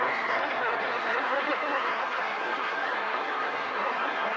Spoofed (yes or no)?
yes